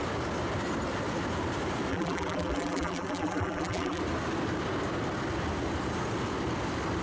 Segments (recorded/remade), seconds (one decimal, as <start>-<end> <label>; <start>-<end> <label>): 0.0-1.9 recorded; 1.9-4.0 remade; 4.0-7.0 recorded